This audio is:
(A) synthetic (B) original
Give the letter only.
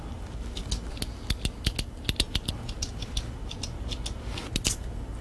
B